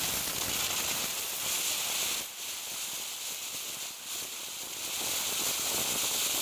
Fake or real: real